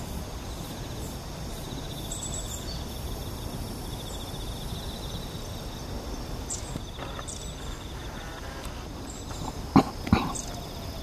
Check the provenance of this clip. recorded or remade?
recorded